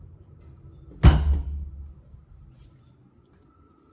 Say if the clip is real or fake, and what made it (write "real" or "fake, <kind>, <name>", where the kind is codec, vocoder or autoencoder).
real